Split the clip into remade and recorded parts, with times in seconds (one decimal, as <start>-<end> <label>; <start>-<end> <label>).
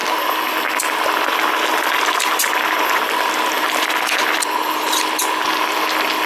0.0-6.3 recorded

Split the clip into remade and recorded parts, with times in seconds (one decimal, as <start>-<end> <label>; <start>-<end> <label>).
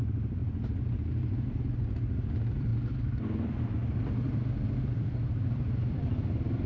0.0-0.4 remade; 0.4-1.5 recorded; 1.5-2.7 remade; 2.7-3.2 recorded; 3.2-6.7 remade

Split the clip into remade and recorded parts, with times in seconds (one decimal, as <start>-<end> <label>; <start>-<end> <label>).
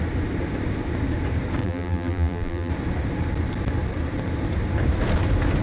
0.0-1.6 recorded; 1.6-2.7 remade; 2.7-5.6 recorded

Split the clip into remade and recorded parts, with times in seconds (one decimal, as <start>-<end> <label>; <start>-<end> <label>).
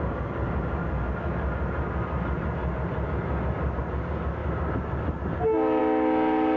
0.0-4.4 recorded; 4.4-5.2 remade; 5.2-6.6 recorded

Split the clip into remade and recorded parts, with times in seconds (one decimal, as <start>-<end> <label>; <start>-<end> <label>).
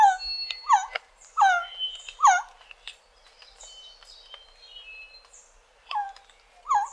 0.0-6.9 recorded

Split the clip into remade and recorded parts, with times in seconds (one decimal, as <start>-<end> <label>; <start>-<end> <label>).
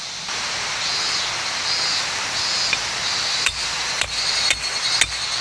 0.0-1.9 recorded; 1.9-5.0 remade; 5.0-5.4 recorded